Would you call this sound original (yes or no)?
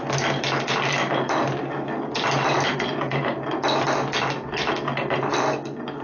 yes